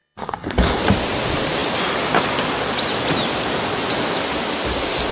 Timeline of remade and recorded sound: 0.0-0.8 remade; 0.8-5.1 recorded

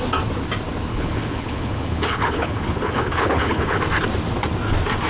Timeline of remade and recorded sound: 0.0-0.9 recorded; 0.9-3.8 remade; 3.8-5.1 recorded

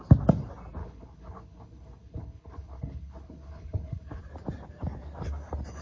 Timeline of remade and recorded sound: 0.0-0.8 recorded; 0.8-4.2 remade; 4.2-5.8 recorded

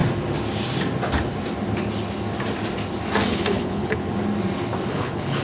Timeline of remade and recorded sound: 0.0-3.2 recorded; 3.2-4.0 remade; 4.0-4.9 recorded; 4.9-5.4 remade